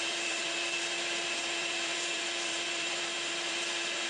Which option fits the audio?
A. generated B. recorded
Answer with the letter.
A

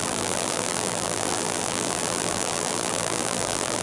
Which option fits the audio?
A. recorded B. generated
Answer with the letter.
B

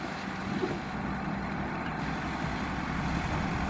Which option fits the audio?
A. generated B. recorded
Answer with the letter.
B